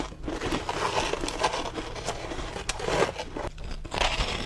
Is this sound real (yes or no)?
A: yes